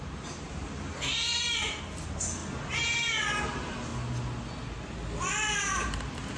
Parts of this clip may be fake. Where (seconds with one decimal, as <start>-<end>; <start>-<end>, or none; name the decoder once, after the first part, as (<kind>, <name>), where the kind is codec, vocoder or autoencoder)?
0.0-2.4 (vocoder, BigVGAN v2); 3.4-3.9; 5.6-6.4